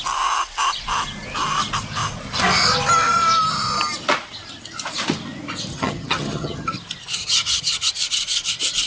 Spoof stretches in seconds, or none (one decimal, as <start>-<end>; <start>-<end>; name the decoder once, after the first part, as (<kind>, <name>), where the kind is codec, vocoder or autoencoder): 5.7-6.7 (vocoder, HiFi-GAN); 7.2-7.9

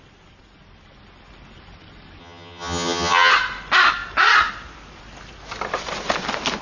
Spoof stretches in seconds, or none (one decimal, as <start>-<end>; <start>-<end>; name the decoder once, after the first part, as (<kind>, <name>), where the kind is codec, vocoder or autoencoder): 2.2-3.3 (vocoder, HiFi-GAN)

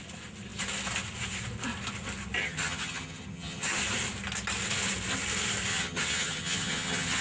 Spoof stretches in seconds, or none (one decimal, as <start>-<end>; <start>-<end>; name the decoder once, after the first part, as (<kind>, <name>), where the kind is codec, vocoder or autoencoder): 2.4-3.8 (vocoder, HiFi-GAN); 5.7-7.2

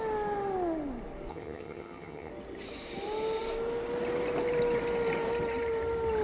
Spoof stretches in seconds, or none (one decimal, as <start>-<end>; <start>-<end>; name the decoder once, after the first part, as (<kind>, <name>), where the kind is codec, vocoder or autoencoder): 1.3-2.3 (vocoder, HiFi-GAN)

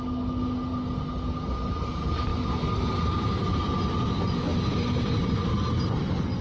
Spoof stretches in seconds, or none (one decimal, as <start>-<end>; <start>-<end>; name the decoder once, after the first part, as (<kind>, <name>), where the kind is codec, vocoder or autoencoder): none